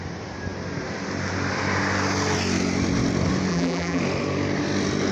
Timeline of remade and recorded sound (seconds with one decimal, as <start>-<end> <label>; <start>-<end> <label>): 0.0-3.5 recorded; 3.5-4.0 remade; 4.0-5.1 recorded